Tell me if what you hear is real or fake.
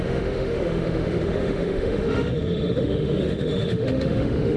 fake